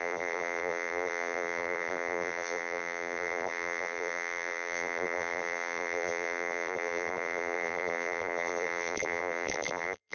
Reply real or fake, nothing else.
fake